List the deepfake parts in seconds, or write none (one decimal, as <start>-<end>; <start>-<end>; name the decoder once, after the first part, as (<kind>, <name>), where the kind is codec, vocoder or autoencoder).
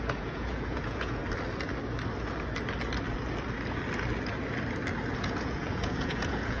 0.0-1.2 (vocoder, Vocos); 5.2-6.6